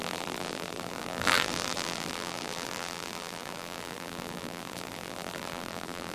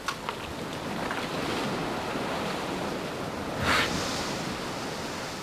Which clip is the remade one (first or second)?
first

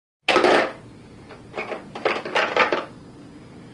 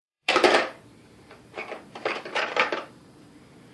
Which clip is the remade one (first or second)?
second